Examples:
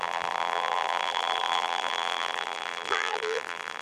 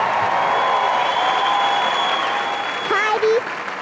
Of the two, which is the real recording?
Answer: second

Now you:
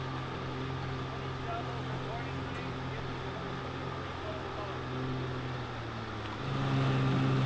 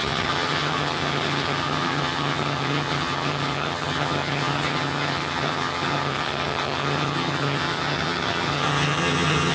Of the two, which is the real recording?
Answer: first